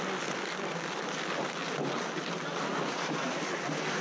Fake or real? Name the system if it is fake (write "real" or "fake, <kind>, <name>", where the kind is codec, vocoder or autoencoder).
real